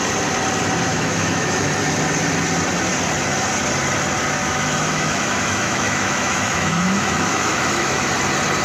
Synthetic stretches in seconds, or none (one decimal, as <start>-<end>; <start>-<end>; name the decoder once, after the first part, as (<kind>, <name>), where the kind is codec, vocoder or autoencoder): 0.9-1.7 (autoencoder, DAC-VAE); 4.4-8.1